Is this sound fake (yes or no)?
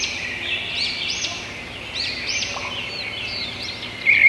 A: no